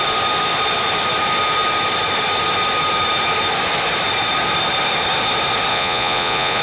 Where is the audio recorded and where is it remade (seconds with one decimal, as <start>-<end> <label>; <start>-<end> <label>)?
0.0-5.7 recorded; 5.7-6.6 remade